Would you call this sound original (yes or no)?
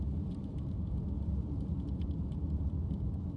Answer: no